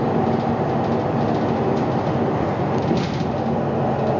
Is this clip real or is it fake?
real